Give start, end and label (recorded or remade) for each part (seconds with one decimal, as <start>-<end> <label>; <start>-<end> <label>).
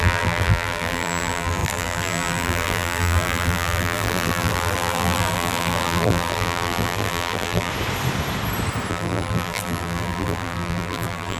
0.0-7.7 remade; 7.7-8.9 recorded; 8.9-11.4 remade